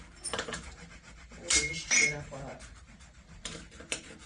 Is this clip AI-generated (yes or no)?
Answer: yes